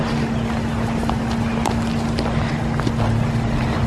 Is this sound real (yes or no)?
yes